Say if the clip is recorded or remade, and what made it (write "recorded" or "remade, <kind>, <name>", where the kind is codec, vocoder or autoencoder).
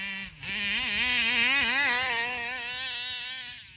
recorded